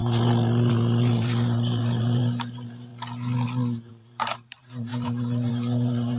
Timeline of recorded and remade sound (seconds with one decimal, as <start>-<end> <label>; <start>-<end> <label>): 0.0-0.7 recorded; 0.7-2.9 remade; 2.9-3.9 recorded; 3.9-6.2 remade